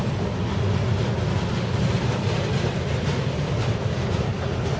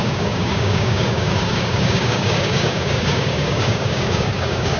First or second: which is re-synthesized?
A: second